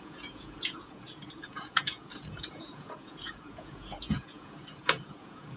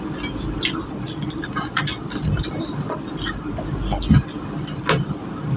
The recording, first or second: second